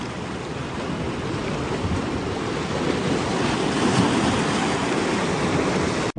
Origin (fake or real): real